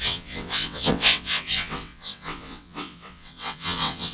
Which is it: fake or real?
fake